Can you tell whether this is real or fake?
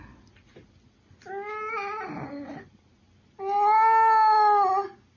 real